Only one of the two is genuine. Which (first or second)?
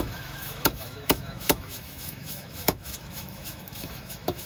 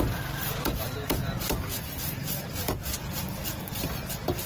second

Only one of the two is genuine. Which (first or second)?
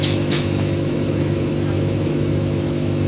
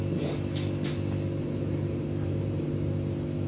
second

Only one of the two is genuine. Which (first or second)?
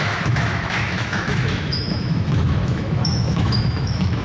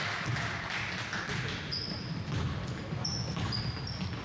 second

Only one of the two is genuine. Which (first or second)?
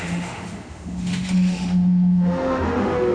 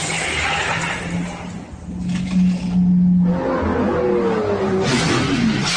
second